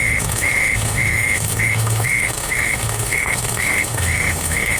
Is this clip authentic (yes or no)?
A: no